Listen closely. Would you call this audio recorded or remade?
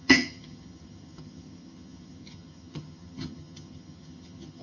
remade